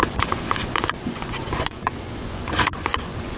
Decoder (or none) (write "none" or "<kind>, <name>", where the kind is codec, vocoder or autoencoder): vocoder, Vocos